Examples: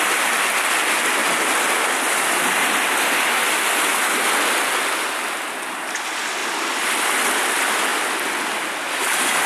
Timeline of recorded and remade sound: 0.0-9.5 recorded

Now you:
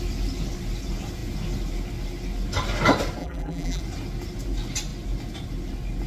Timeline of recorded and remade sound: 0.0-3.2 recorded; 3.2-3.8 remade; 3.8-6.1 recorded

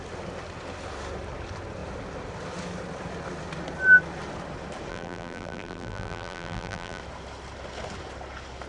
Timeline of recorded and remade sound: 0.0-4.9 recorded; 4.9-7.0 remade; 7.0-8.7 recorded

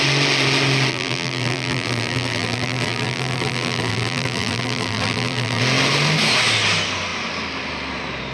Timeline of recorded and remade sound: 0.0-0.9 recorded; 0.9-5.6 remade; 5.6-8.3 recorded